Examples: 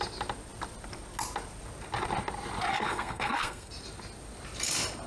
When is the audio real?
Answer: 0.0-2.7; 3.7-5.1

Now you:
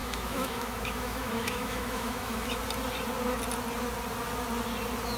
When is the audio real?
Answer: 2.6-5.2

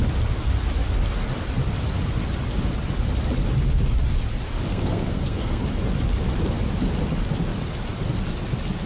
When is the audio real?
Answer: 0.0-4.7; 5.6-8.9

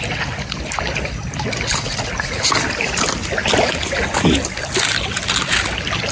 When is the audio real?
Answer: 0.0-6.1

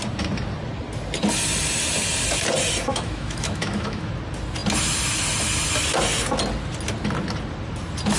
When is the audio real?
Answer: 0.0-2.9; 4.1-8.2

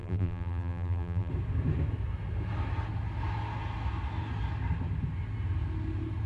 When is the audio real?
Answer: 1.3-6.3